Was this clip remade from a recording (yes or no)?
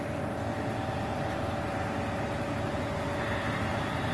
no